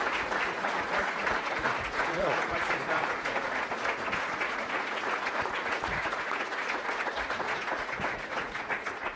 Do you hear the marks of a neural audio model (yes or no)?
yes